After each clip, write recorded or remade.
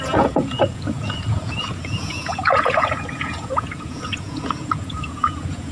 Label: remade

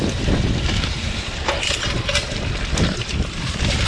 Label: remade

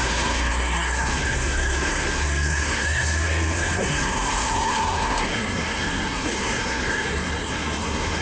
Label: remade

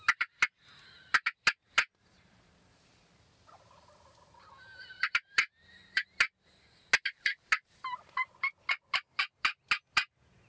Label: recorded